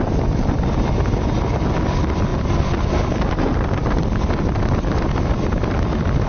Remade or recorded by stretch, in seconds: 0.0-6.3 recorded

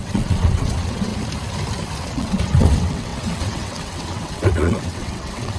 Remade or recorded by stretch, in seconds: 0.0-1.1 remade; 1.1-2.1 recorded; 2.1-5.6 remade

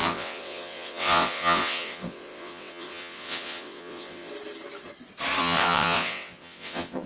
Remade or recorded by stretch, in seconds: 0.0-4.3 remade; 4.3-5.4 recorded; 5.4-7.1 remade

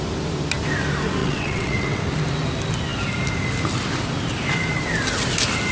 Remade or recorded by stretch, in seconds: 0.0-1.2 recorded; 1.2-2.0 remade; 2.0-5.7 recorded

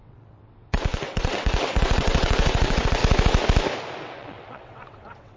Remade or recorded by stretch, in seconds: 0.0-3.0 remade; 3.0-4.0 recorded; 4.0-5.4 remade